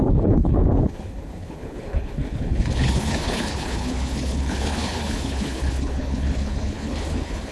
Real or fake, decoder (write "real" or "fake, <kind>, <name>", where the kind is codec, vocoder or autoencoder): fake, codec, HILCodec